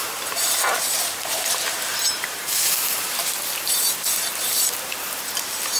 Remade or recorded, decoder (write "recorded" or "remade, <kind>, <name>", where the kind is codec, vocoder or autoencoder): remade, vocoder, BigVGAN v2